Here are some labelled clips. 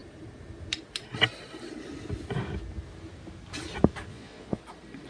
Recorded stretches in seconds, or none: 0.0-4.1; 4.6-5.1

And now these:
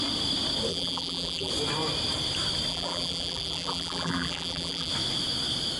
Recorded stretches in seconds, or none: 0.0-0.7; 1.5-2.7; 4.9-5.8